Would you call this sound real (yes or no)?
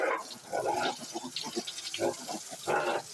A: yes